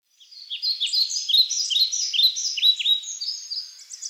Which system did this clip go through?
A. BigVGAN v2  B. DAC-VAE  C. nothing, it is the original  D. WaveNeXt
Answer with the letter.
C